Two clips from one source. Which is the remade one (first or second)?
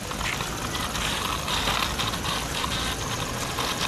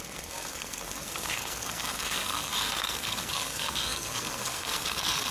second